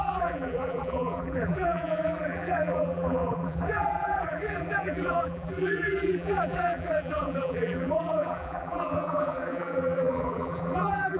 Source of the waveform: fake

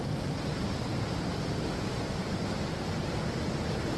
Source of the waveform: real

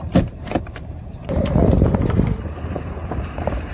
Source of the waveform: fake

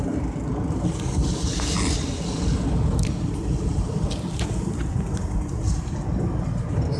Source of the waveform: real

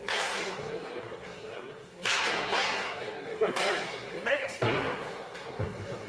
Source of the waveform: fake